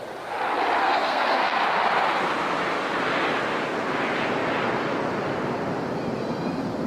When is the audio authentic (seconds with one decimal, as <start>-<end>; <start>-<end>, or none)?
0.0-0.8; 1.5-6.9